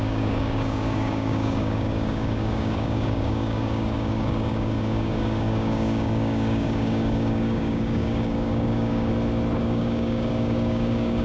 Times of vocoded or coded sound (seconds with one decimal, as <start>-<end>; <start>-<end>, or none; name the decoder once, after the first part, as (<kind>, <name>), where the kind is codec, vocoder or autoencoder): 0.0-9.1 (codec, DAC); 9.6-11.2